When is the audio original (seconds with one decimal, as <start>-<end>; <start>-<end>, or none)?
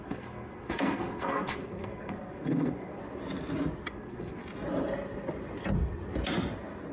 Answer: 3.0-3.9; 4.4-6.9